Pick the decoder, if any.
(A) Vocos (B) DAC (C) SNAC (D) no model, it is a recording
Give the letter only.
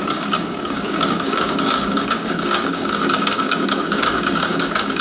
B